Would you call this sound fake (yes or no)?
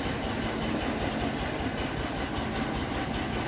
no